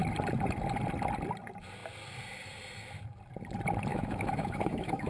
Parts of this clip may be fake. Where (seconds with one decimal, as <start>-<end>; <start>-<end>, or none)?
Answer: 3.9-5.1